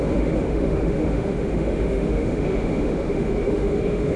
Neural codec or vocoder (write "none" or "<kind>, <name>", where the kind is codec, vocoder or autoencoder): autoencoder, DAC-VAE